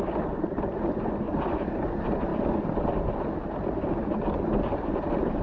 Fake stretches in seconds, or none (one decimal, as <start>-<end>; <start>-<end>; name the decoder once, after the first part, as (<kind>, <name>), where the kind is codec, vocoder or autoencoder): none